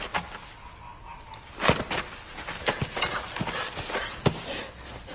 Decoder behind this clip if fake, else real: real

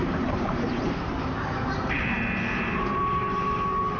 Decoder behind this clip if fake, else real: fake, vocoder, BigVGAN v2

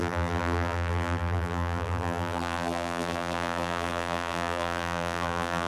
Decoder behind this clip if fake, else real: fake, vocoder, BigVGAN v2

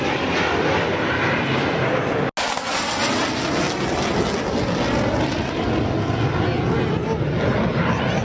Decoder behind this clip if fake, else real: real